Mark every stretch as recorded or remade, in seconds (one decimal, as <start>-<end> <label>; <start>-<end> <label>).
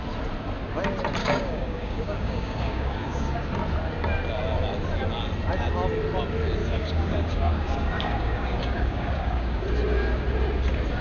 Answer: 0.0-1.2 recorded; 1.2-3.5 remade; 3.5-6.6 recorded; 6.6-9.6 remade; 9.6-11.0 recorded